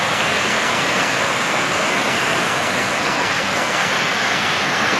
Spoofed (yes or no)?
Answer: yes